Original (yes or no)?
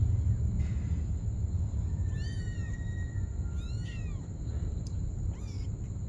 yes